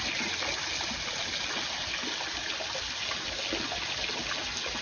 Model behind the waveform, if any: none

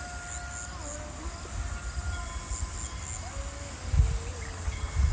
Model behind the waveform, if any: none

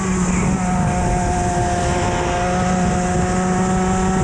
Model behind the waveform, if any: none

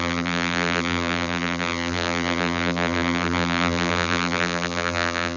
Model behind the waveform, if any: vocoder, BigVGAN v2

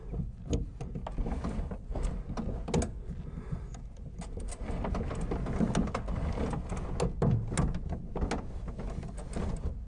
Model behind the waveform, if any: none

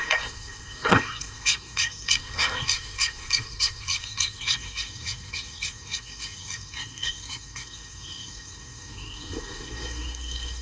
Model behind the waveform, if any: codec, SNAC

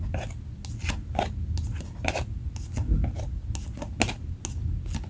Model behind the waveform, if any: none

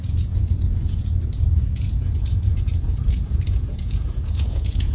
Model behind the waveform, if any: vocoder, Vocos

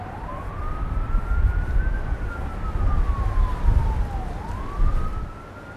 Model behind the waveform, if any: none